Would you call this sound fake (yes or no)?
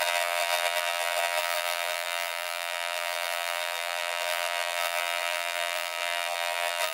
yes